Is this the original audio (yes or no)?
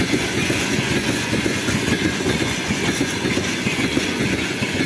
no